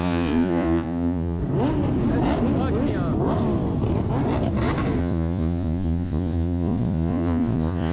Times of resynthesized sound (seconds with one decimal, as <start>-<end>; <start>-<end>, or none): 0.0-1.4; 5.0-7.9